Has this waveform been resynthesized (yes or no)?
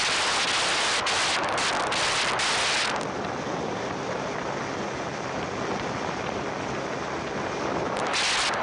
no